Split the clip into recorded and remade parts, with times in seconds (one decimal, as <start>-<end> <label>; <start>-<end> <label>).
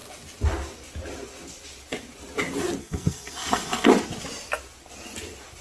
0.0-2.8 recorded; 2.8-3.9 remade; 3.9-5.6 recorded